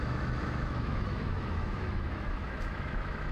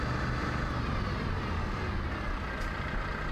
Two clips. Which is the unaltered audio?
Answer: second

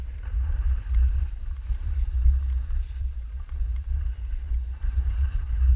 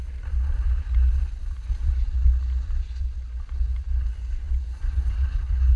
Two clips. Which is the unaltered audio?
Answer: second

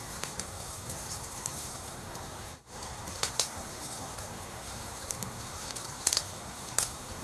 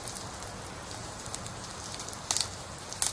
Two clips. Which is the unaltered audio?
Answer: second